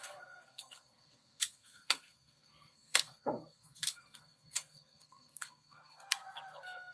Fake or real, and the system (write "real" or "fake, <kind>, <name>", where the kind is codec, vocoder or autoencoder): fake, codec, SNAC